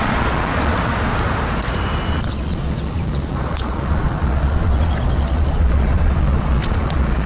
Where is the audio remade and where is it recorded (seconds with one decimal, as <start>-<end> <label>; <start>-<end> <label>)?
0.0-1.1 remade; 1.1-2.1 recorded; 2.1-7.3 remade